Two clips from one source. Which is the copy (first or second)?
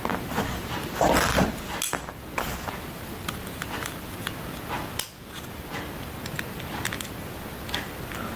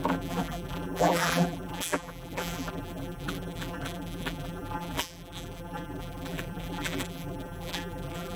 second